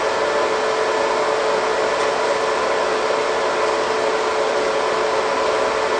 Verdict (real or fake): real